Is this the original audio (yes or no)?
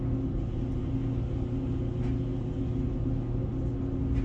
yes